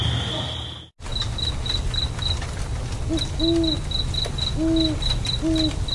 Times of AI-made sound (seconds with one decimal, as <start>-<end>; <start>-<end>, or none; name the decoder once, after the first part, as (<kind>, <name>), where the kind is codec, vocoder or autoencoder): none